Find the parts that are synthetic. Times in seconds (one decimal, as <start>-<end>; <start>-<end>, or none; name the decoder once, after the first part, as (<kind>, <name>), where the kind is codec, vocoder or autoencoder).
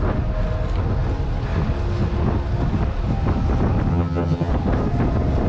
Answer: 3.9-4.5 (vocoder, HiFi-GAN)